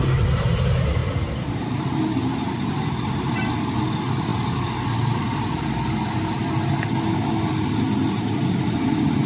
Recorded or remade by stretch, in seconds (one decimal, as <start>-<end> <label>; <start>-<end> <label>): 0.0-1.0 recorded; 1.0-3.3 remade; 3.3-9.3 recorded